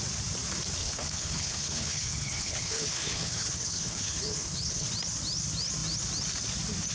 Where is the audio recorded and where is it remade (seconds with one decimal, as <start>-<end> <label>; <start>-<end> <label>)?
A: 0.0-0.8 recorded; 0.8-4.9 remade; 4.9-6.9 recorded